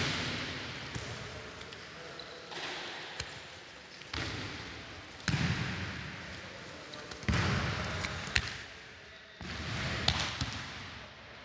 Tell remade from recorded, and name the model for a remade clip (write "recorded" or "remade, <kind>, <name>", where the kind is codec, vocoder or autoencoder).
recorded